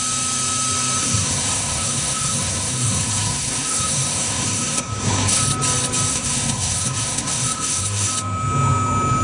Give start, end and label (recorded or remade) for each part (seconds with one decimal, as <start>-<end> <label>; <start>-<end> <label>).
0.0-1.0 recorded; 1.0-5.4 remade; 5.4-6.1 recorded; 6.1-8.1 remade; 8.1-9.2 recorded

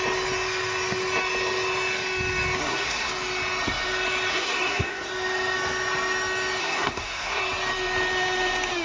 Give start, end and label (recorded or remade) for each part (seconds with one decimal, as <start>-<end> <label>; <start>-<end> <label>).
0.0-2.6 recorded; 2.6-3.1 remade; 3.1-4.3 recorded; 4.3-5.1 remade; 5.1-6.6 recorded; 6.6-7.4 remade; 7.4-8.8 recorded

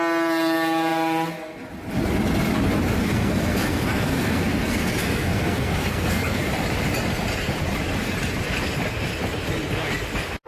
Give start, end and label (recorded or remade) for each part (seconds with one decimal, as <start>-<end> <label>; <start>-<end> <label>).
0.0-3.0 recorded; 3.0-6.5 remade; 6.5-10.5 recorded

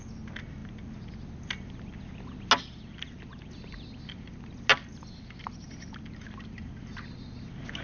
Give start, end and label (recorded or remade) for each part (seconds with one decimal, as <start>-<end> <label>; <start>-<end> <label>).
0.0-7.8 recorded